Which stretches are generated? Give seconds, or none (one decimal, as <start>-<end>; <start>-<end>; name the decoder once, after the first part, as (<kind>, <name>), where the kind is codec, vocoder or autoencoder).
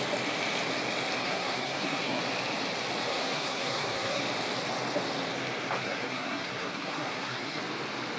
1.2-2.2 (codec, SNAC); 3.1-4.2; 5.8-7.6